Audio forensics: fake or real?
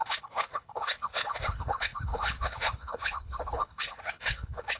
fake